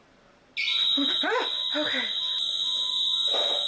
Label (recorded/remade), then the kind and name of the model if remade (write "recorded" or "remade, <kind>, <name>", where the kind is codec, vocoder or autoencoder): recorded